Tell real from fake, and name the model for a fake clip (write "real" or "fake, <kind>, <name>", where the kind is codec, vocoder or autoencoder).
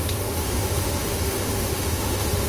fake, autoencoder, DAC-VAE